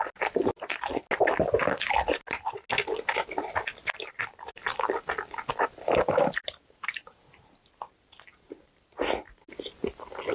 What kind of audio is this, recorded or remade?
recorded